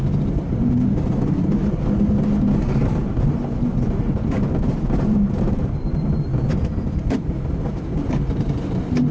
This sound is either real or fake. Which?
real